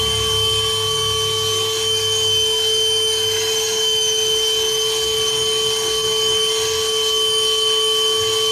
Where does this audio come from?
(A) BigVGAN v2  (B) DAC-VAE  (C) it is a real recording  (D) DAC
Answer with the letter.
D